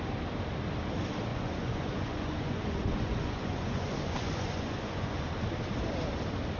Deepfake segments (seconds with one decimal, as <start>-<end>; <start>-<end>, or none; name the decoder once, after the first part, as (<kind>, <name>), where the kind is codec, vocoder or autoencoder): 1.3-5.3 (vocoder, Vocos)